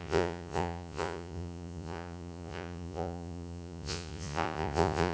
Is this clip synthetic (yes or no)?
yes